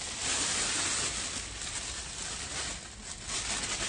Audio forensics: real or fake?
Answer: real